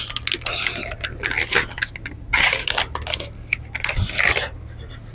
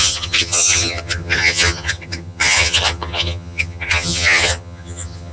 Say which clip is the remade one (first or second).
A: second